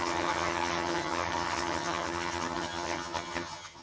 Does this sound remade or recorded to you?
remade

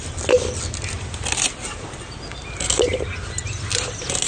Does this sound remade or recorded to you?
recorded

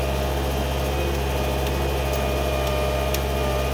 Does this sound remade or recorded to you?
recorded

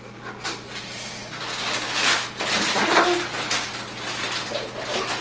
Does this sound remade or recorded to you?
recorded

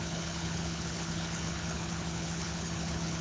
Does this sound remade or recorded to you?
remade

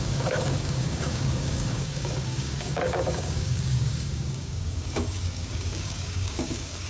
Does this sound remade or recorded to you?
remade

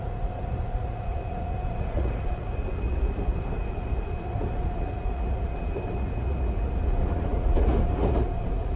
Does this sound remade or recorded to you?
remade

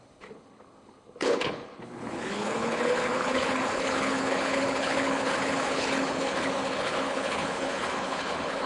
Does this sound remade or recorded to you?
remade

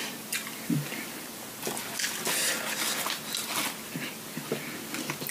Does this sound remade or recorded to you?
recorded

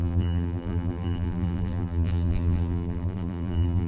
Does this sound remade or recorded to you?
remade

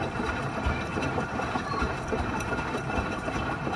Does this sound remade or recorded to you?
remade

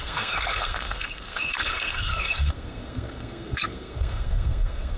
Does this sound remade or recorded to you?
remade